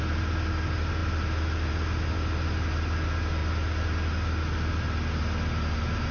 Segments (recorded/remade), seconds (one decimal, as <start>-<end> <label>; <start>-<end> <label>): 0.0-6.1 recorded